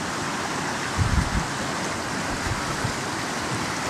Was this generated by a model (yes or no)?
no